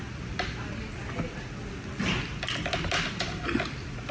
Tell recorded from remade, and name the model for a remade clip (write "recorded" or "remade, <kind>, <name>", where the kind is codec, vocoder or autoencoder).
recorded